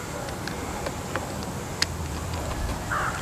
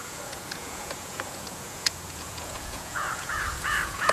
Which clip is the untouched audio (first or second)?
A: first